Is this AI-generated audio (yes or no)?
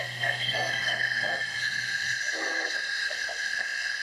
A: yes